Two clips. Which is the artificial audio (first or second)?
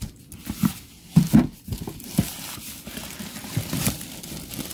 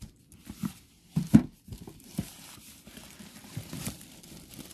second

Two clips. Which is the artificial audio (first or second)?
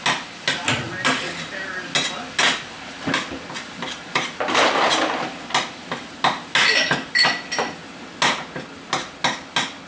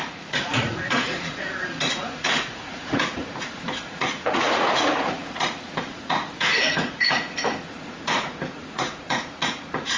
second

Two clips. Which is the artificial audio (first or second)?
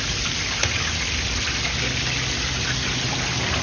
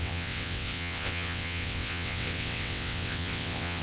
second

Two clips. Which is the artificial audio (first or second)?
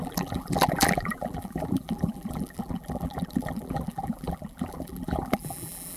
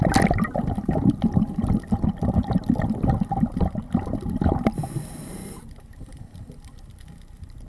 first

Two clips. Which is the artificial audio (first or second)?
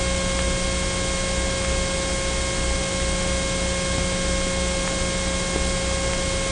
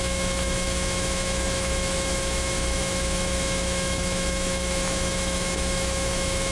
second